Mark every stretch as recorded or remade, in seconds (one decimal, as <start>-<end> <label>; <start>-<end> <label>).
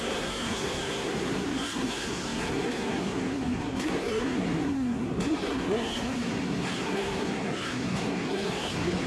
0.0-9.1 remade